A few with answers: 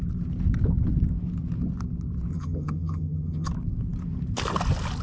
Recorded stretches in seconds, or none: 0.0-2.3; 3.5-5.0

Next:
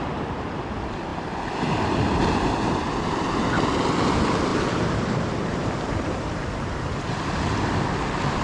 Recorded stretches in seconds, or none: 0.0-4.5; 7.1-8.4